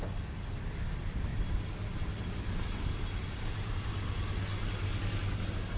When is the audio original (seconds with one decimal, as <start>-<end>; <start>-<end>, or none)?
0.0-1.3; 2.2-3.2; 3.9-5.8